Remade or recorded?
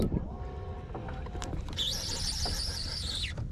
recorded